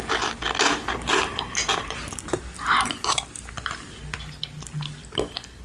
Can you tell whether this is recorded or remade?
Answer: recorded